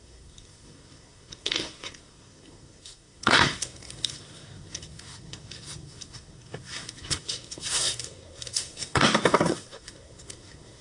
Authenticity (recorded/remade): remade